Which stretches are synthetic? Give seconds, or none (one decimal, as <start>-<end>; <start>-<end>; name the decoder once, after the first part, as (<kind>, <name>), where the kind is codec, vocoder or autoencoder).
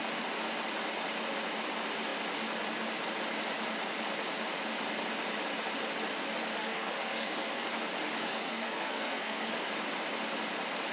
6.6-7.7 (codec, SNAC); 8.2-9.6